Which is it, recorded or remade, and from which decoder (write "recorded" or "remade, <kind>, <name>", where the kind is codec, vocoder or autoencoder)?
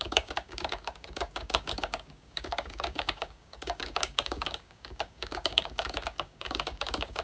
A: remade, codec, DAC